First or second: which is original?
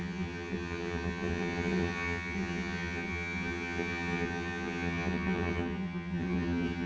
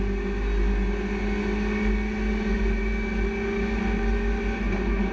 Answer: second